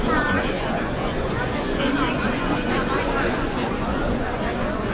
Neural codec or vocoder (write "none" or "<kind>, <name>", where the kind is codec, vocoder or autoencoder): vocoder, Vocos